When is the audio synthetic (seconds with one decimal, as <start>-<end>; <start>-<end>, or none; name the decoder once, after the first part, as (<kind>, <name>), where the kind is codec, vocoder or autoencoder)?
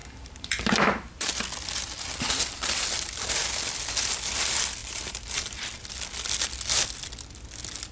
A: 0.0-1.4 (vocoder, BigVGAN v2); 4.8-5.9